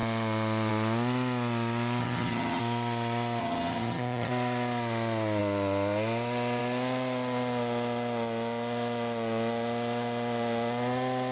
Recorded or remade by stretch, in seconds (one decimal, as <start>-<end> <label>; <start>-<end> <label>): 0.0-2.0 recorded; 2.0-2.6 remade; 2.6-3.4 recorded; 3.4-4.3 remade; 4.3-11.3 recorded